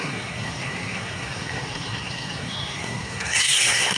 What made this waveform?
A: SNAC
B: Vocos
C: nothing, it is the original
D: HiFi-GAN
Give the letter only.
A